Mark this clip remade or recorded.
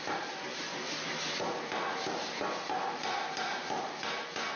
recorded